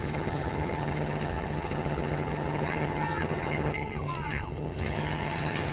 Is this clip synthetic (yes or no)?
yes